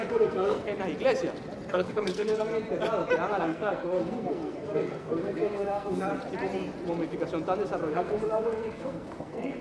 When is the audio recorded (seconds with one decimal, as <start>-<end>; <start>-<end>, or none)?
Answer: 0.7-1.7; 2.5-3.4; 6.1-7.9